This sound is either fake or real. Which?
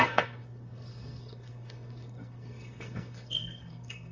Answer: fake